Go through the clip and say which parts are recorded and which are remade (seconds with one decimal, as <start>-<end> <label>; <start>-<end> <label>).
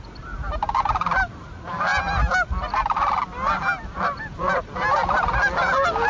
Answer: 0.0-6.1 recorded